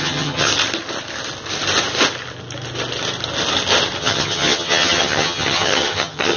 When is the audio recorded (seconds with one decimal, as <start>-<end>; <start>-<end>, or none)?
0.5-4.0